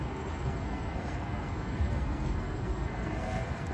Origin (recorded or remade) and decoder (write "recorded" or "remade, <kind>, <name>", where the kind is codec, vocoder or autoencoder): remade, codec, SNAC